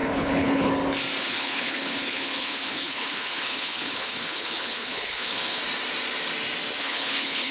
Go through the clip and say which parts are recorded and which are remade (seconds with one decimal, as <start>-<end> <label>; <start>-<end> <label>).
0.0-0.7 remade; 0.7-1.2 recorded; 1.2-5.6 remade; 5.6-6.8 recorded; 6.8-7.5 remade